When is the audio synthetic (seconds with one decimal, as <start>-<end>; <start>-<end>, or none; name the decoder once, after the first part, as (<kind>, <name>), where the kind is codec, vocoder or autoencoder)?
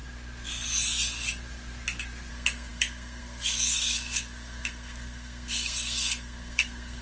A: 2.3-7.0 (codec, SNAC)